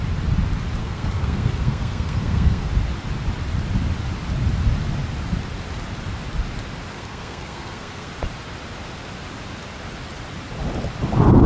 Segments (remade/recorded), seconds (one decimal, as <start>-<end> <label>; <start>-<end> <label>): 0.0-0.8 recorded; 0.8-2.7 remade; 2.7-6.9 recorded; 6.9-8.1 remade; 8.1-11.5 recorded